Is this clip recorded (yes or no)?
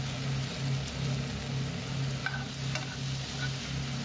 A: yes